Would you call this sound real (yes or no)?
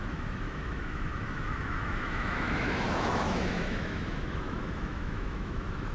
no